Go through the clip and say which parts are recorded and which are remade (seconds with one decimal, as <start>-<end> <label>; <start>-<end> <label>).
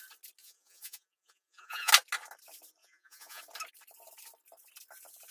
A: 0.0-0.4 recorded; 0.4-1.9 remade; 1.9-2.8 recorded; 2.8-3.4 remade; 3.4-5.3 recorded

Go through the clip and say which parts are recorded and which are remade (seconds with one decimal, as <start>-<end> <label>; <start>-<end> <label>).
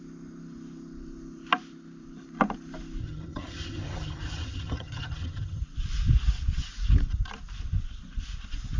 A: 0.0-3.0 recorded; 3.0-5.6 remade; 5.6-8.8 recorded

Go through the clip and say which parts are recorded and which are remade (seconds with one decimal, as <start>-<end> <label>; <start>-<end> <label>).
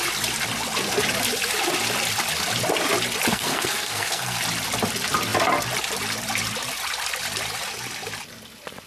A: 0.0-3.3 recorded; 3.3-4.4 remade; 4.4-8.9 recorded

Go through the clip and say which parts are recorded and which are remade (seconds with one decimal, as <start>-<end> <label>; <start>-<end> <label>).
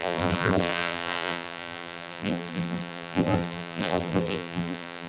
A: 0.0-5.1 remade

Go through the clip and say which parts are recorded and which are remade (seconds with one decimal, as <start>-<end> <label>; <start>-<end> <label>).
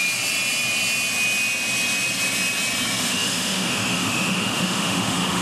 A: 0.0-3.0 recorded; 3.0-5.4 remade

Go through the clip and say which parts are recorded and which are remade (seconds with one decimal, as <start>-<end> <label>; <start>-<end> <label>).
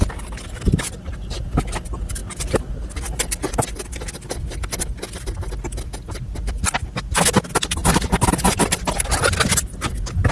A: 0.0-10.3 recorded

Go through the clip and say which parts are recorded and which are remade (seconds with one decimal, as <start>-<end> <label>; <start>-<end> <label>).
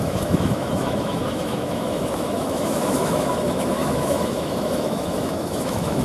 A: 0.0-6.0 remade